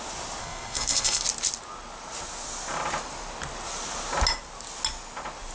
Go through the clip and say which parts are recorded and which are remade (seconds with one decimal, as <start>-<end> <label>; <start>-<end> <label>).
0.0-0.4 recorded; 0.4-1.2 remade; 1.2-5.5 recorded